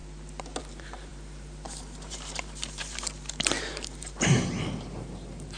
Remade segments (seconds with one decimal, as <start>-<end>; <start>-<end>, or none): 0.6-5.6